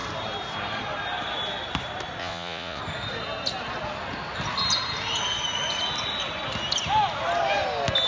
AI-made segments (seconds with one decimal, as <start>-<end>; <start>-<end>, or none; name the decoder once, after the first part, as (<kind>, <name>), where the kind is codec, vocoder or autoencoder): 2.2-2.8 (vocoder, Vocos)